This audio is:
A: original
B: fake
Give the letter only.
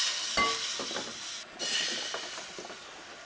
A